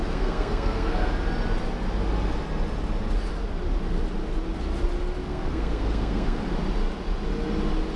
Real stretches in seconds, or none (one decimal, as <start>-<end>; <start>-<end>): 1.1-5.2; 6.5-8.0